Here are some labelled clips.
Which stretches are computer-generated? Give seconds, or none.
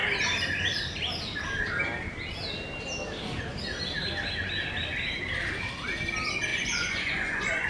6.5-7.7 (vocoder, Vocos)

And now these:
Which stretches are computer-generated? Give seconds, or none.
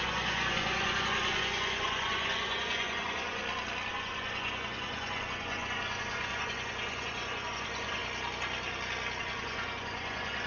0.0-3.4 (vocoder, Vocos); 3.9-8.0; 9.2-10.5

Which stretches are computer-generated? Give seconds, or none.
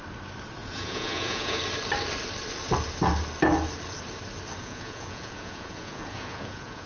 0.6-1.6 (vocoder, Vocos); 4.6-6.9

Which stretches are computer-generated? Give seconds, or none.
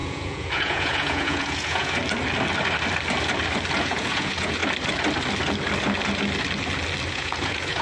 0.0-2.0 (vocoder, Vocos); 3.8-4.6; 7.1-7.8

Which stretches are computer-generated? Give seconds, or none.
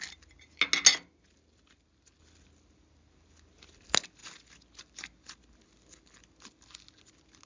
none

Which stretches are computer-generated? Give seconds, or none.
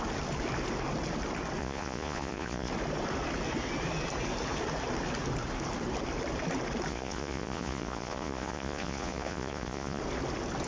1.6-2.7 (vocoder, Vocos); 6.9-10.0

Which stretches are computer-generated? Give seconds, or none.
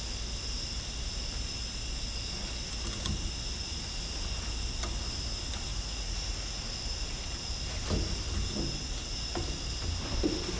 5.7-6.6 (vocoder, Vocos)